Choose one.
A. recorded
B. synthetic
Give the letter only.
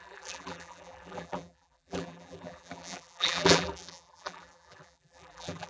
B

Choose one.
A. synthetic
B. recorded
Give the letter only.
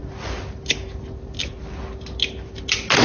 B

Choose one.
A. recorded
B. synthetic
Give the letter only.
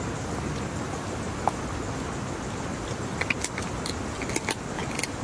A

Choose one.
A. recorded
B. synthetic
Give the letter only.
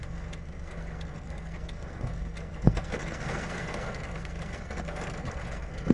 B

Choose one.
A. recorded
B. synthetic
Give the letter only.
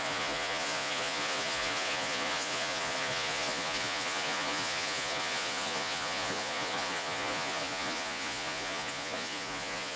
B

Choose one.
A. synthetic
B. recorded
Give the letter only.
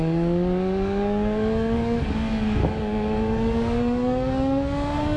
A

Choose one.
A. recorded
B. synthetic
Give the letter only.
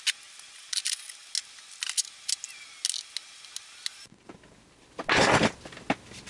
A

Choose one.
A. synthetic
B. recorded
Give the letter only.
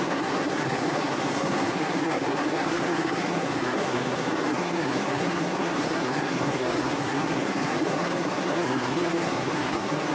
A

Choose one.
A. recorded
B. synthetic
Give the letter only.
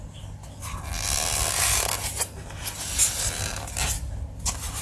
A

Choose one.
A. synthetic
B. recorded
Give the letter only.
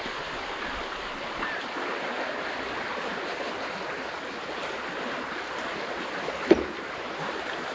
B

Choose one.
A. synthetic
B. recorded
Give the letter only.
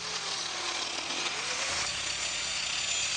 A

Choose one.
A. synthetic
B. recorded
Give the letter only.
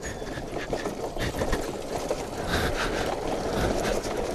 B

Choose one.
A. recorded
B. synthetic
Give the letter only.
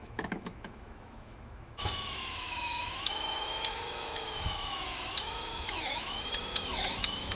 B